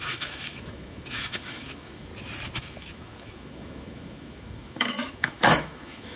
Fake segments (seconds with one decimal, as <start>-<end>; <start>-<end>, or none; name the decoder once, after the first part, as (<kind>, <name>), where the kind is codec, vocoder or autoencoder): 0.0-2.1 (autoencoder, DAC-VAE); 2.6-6.2